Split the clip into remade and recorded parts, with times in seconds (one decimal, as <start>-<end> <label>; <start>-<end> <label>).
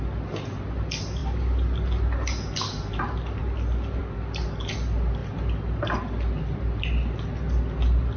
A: 0.0-8.2 recorded